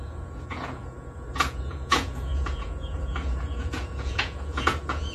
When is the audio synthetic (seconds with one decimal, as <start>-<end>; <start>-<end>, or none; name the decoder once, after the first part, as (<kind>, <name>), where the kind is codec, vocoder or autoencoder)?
0.0-5.1 (vocoder, Vocos)

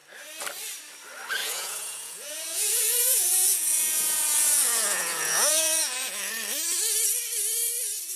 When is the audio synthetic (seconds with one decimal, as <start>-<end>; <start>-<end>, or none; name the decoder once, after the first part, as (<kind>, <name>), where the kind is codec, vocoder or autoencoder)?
1.4-6.3 (vocoder, Vocos)

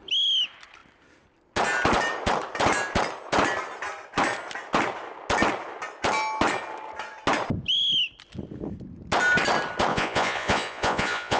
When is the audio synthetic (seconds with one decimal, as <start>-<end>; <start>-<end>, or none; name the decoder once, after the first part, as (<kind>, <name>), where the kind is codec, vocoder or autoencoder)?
9.9-11.4 (vocoder, Vocos)